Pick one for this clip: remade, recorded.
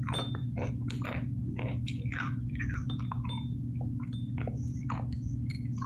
remade